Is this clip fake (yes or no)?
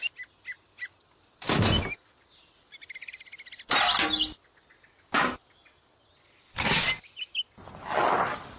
no